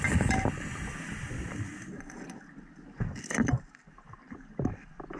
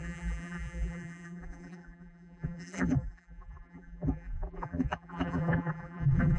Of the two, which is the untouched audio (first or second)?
first